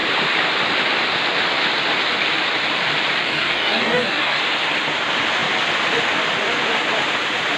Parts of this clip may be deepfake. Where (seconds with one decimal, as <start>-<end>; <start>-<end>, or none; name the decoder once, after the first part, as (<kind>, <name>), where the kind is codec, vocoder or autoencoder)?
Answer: 3.2-4.4 (codec, DAC)